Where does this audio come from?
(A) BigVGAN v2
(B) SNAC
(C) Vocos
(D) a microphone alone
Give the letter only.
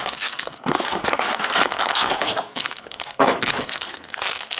B